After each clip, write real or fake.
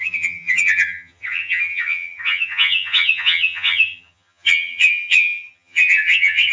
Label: fake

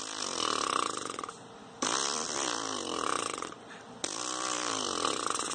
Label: fake